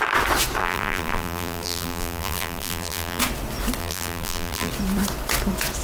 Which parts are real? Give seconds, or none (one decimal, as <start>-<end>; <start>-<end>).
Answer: 0.0-0.6; 3.2-3.8; 4.7-5.8